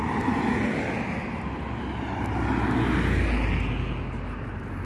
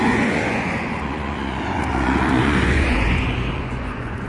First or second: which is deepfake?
second